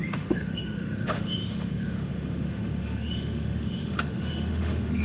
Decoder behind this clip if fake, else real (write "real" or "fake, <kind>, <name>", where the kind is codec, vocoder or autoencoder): fake, autoencoder, DAC-VAE